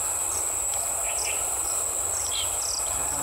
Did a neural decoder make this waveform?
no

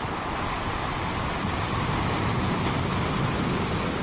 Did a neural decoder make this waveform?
no